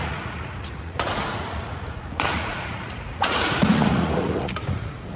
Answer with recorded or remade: remade